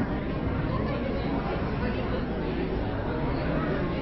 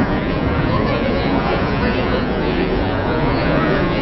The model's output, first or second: second